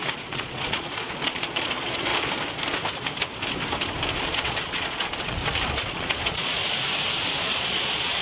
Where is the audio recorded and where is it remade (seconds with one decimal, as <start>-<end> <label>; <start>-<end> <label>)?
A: 0.0-2.1 remade; 2.1-4.2 recorded; 4.2-5.4 remade; 5.4-5.9 recorded; 5.9-6.6 remade; 6.6-7.4 recorded; 7.4-8.2 remade